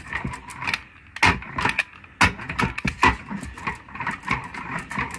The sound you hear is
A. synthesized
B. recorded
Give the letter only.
B